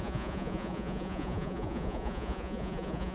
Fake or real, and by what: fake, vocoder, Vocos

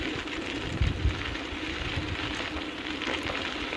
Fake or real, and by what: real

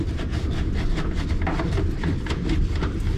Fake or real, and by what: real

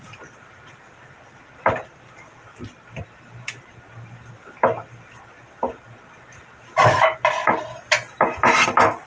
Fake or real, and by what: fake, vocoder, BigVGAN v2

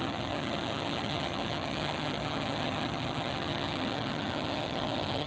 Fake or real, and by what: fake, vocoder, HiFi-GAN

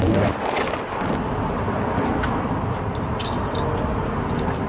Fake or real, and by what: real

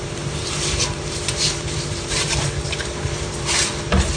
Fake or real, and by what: fake, vocoder, BigVGAN v2